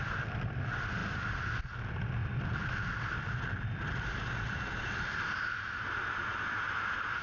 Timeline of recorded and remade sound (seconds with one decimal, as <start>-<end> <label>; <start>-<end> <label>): 0.0-7.2 recorded